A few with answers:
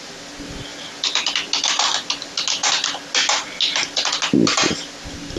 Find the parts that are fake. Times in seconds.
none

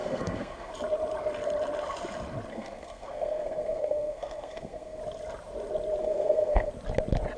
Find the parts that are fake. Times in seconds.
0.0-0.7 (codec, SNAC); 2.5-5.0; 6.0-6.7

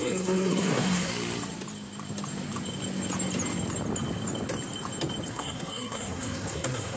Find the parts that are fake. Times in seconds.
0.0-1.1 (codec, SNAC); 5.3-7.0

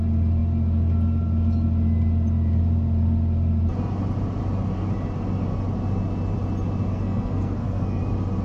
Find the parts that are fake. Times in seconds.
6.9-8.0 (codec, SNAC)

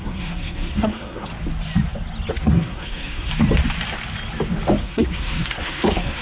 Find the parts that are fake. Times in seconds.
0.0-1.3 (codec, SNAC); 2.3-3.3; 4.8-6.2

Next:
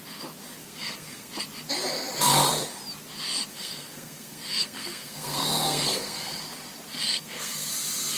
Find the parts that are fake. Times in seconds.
0.6-1.3 (codec, SNAC); 3.5-6.4; 6.9-7.7

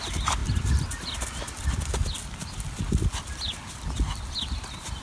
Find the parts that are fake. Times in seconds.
none

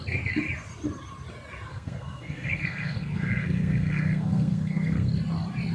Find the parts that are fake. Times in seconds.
1.7-5.1 (codec, SNAC)